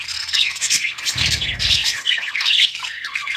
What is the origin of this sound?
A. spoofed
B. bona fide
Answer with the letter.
A